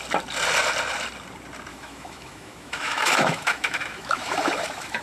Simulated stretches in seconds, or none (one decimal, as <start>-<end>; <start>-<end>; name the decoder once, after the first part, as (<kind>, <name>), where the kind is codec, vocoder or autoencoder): 1.7-5.0 (autoencoder, DAC-VAE)